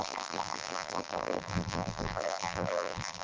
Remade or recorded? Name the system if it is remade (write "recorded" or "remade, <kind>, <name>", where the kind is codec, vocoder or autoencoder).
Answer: remade, vocoder, BigVGAN v2